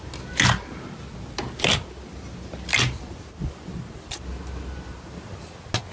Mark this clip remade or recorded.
recorded